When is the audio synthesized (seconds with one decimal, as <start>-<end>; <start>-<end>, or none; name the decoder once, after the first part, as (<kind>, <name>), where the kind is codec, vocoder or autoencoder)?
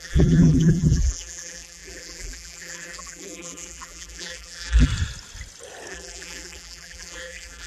0.0-4.9 (vocoder, BigVGAN v2); 5.9-7.7